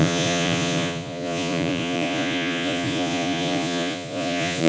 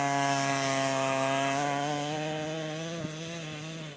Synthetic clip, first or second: first